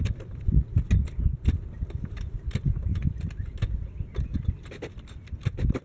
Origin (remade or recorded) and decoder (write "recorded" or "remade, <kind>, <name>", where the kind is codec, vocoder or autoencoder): recorded